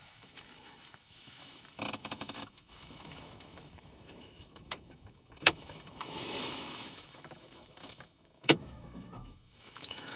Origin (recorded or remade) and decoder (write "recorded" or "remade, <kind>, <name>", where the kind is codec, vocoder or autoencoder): remade, autoencoder, DAC-VAE